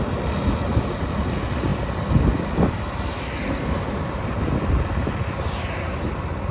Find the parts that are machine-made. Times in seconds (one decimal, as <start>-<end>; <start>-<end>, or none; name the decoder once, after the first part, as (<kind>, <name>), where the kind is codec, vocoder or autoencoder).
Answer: none